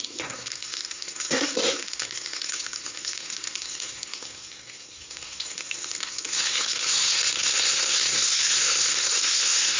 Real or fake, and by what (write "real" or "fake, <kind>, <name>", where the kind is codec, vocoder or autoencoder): fake, codec, SNAC